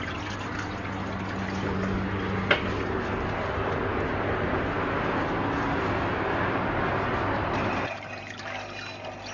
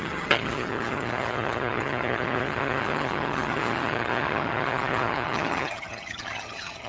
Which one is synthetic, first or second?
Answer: second